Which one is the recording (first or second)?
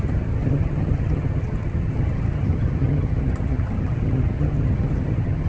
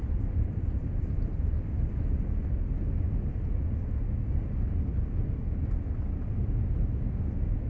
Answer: second